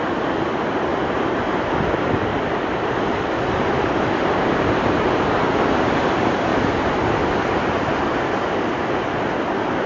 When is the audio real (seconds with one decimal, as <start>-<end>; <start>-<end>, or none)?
0.0-0.9; 1.7-2.3; 5.4-9.9